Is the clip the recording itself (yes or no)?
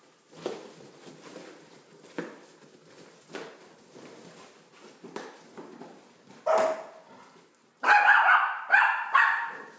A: yes